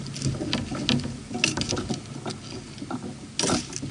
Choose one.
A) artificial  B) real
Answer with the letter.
B